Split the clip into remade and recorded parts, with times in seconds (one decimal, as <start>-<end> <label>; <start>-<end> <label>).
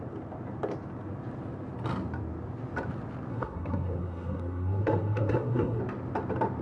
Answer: 0.0-3.3 recorded; 3.3-5.8 remade; 5.8-6.6 recorded